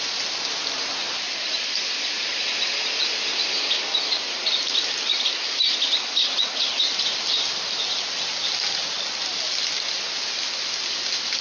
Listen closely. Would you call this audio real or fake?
real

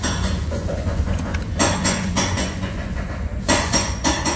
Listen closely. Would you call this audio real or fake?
fake